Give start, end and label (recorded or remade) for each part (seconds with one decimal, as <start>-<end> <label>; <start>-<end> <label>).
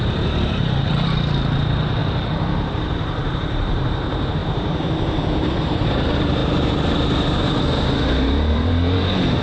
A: 0.0-2.0 remade; 2.0-2.7 recorded; 2.7-9.4 remade